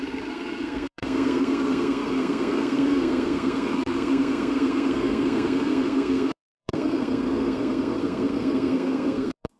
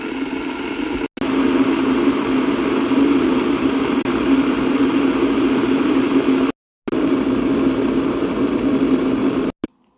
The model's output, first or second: first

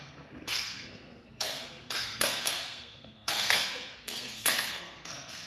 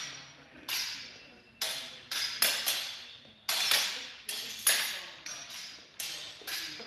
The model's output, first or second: first